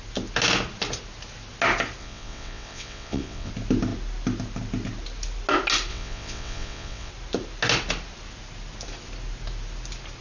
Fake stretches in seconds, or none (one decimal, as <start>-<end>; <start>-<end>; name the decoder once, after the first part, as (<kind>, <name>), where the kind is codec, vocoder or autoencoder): 2.0-3.5 (vocoder, WaveNeXt); 5.9-7.1